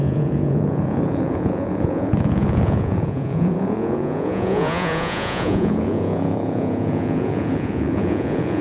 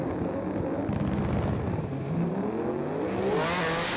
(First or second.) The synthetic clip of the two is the first